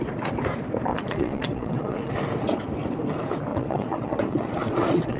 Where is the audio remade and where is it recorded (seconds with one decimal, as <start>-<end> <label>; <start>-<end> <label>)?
0.0-0.9 recorded; 0.9-2.1 remade; 2.1-3.5 recorded; 3.5-5.2 remade